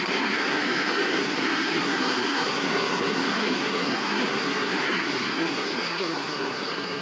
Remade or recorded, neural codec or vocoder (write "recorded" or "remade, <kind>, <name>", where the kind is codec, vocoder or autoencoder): remade, codec, SNAC